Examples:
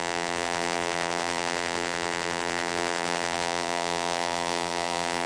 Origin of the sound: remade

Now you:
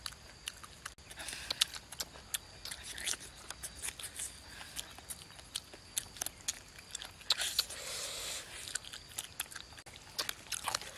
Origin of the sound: recorded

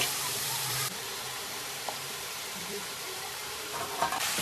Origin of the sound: remade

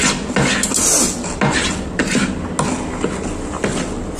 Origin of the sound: recorded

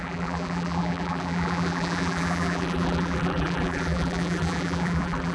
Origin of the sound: remade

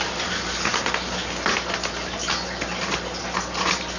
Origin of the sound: recorded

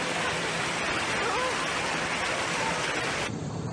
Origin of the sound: recorded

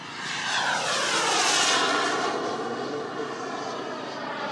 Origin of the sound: recorded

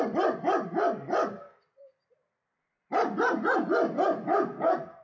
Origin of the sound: remade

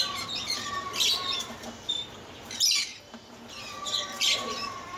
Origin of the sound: remade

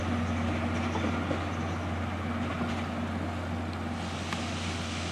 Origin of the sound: recorded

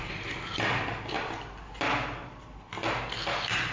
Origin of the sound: recorded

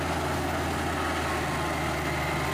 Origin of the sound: recorded